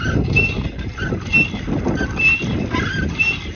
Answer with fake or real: real